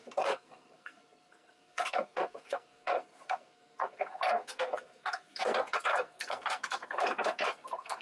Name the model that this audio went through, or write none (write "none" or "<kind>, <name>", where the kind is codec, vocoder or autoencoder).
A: codec, SNAC